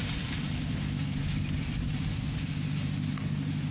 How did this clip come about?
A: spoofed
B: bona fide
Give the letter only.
B